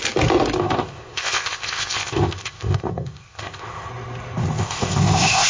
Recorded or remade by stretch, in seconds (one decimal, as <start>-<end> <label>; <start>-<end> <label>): 0.0-0.6 recorded; 0.6-3.9 remade; 3.9-4.6 recorded; 4.6-5.5 remade